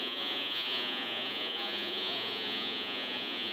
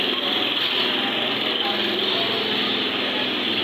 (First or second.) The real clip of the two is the second